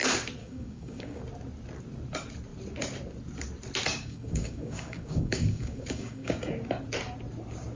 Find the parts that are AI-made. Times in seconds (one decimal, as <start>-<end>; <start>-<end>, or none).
0.4-1.2; 3.9-6.5